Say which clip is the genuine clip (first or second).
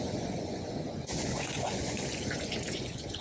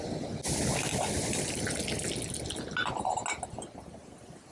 second